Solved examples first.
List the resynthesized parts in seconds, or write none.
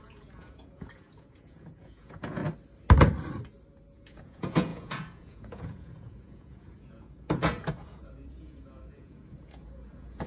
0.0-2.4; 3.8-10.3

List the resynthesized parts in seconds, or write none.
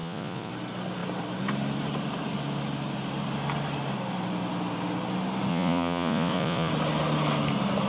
0.0-0.5; 5.5-6.7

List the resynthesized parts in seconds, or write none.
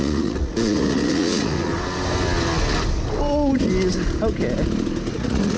0.0-1.7; 5.1-5.6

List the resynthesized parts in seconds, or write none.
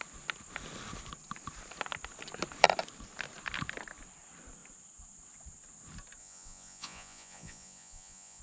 6.2-8.4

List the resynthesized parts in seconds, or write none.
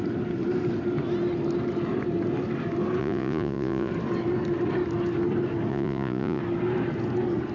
3.0-3.9; 5.7-6.4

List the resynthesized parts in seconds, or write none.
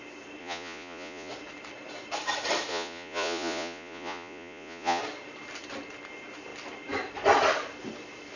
0.4-1.3; 2.7-5.0